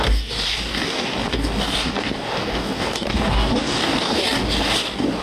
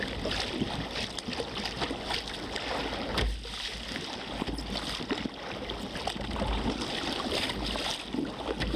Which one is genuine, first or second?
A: second